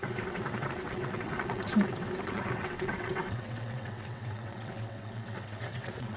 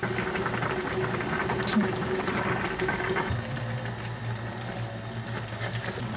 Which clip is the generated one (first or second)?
first